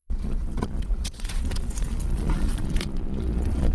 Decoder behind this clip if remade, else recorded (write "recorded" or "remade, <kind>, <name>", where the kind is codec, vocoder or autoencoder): remade, vocoder, Vocos